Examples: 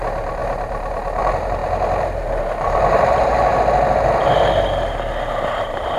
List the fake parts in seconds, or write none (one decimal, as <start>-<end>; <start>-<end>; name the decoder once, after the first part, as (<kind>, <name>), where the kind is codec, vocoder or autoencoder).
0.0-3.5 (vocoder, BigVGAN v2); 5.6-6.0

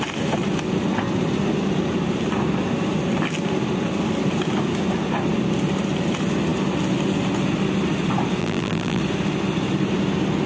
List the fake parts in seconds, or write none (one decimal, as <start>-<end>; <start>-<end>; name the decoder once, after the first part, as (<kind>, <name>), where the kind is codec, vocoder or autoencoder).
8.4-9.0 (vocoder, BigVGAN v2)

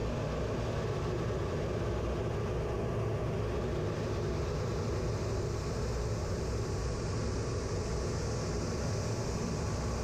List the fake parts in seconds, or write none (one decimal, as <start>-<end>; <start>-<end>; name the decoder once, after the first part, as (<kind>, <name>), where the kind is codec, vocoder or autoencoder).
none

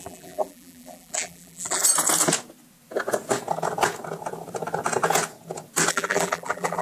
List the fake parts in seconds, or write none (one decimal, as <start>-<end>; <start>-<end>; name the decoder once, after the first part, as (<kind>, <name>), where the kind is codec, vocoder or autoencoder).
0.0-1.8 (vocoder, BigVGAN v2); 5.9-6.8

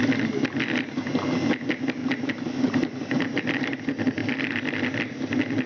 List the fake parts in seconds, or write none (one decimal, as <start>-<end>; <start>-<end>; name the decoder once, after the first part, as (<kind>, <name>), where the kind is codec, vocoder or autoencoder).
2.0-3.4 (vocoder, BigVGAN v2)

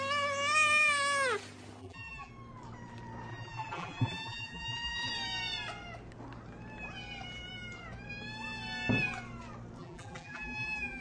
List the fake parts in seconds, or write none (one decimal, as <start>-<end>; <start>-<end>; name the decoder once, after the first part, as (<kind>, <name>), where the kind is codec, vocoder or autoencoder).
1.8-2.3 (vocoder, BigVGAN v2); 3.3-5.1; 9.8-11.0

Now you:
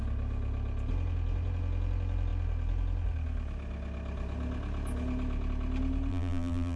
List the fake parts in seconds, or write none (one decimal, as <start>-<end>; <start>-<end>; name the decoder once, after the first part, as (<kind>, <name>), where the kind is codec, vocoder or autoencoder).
6.1-6.8 (vocoder, BigVGAN v2)

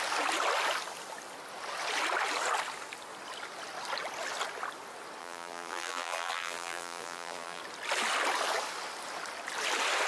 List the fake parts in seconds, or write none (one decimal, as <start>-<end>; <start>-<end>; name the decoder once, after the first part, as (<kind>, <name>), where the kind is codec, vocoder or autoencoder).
5.2-7.6 (vocoder, BigVGAN v2)